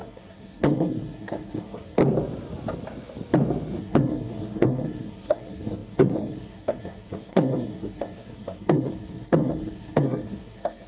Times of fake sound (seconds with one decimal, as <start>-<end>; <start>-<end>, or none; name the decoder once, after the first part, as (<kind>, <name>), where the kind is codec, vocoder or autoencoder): 0.0-2.0 (codec, SNAC); 3.8-10.9